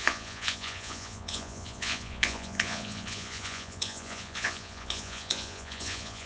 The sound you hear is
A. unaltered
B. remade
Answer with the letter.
B